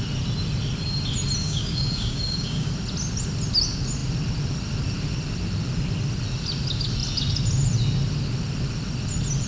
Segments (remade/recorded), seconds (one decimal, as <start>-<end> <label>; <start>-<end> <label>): 0.0-1.4 recorded; 1.4-2.7 remade; 2.7-9.5 recorded